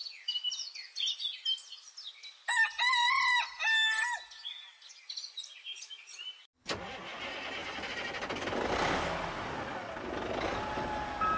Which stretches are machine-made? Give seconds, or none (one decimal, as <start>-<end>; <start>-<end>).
none